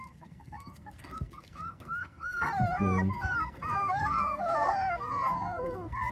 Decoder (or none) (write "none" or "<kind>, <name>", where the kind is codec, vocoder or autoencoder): codec, SNAC